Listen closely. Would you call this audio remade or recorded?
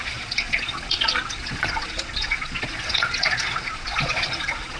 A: remade